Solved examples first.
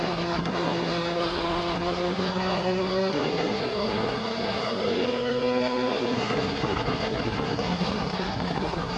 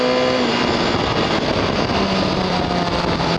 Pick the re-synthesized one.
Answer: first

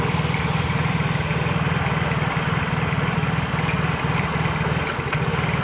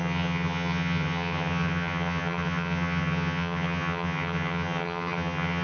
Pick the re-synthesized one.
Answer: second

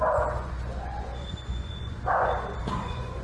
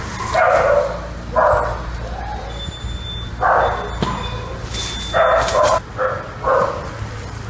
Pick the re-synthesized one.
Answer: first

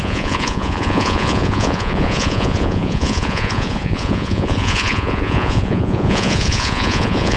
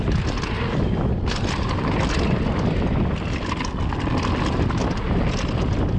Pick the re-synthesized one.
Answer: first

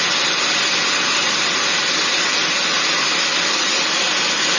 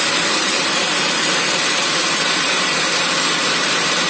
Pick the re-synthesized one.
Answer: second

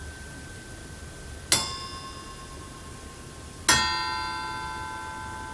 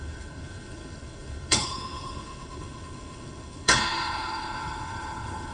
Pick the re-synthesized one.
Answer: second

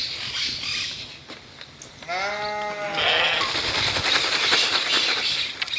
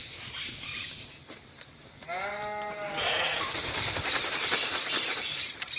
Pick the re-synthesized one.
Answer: second